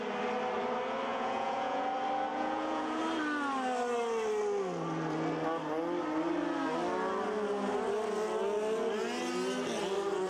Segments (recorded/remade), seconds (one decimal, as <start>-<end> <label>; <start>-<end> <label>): 0.0-1.1 recorded; 1.1-1.8 remade; 1.8-2.3 recorded; 2.3-3.0 remade; 3.0-10.3 recorded

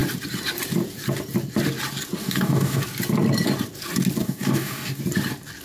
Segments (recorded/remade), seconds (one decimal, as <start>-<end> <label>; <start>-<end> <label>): 0.0-2.2 recorded; 2.2-2.8 remade; 2.8-4.2 recorded; 4.2-5.0 remade; 5.0-5.6 recorded

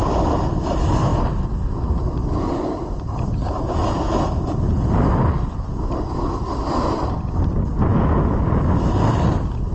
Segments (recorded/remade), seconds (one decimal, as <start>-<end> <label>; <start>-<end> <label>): 0.0-7.9 recorded; 7.9-8.4 remade; 8.4-9.7 recorded

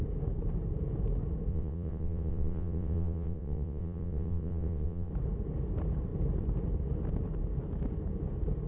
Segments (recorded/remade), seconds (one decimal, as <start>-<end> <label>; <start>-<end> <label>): 0.0-1.5 recorded; 1.5-5.1 remade; 5.1-8.7 recorded